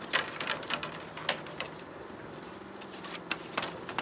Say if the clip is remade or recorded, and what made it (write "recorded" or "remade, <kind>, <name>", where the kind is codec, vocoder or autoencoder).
recorded